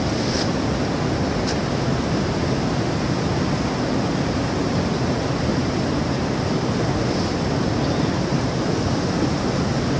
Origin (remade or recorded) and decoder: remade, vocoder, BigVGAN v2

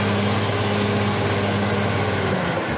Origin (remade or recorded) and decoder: recorded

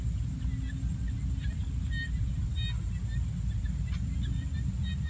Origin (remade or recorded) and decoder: recorded